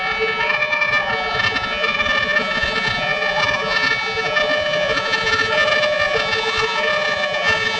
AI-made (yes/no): yes